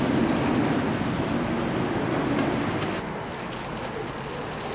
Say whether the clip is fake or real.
real